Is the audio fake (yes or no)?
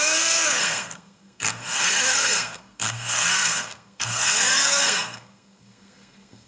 yes